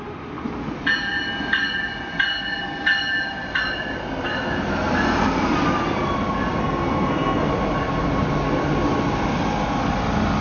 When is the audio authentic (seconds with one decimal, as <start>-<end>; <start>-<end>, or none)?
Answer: 0.0-6.6; 7.5-10.4